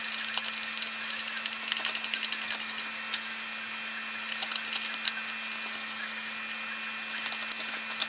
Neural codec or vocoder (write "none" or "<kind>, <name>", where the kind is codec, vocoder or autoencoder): none